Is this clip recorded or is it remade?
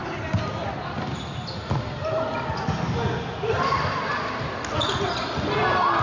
recorded